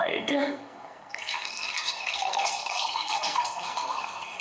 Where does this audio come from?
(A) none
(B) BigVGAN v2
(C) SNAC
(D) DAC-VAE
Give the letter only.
C